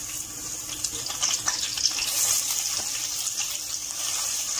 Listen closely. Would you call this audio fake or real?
real